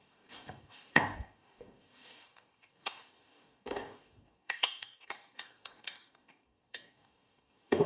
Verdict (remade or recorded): remade